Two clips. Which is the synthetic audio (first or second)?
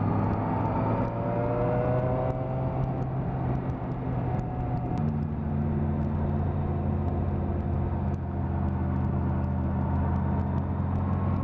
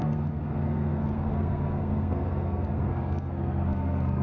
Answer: second